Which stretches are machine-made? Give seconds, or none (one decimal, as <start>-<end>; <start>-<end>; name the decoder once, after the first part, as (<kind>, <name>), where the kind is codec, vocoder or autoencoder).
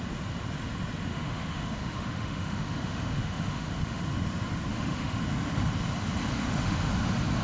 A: 1.1-4.0 (autoencoder, DAC-VAE); 4.7-5.2; 6.3-6.9